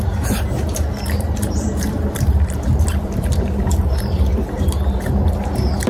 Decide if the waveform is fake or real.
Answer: fake